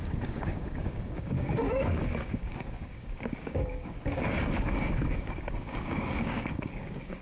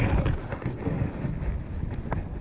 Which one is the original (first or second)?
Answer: second